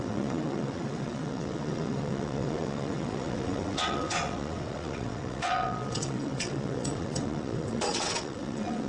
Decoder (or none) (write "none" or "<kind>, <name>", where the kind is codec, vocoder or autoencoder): vocoder, WaveNeXt